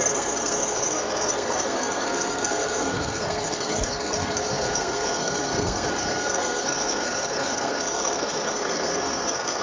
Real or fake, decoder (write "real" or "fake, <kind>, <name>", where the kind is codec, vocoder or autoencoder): fake, codec, SNAC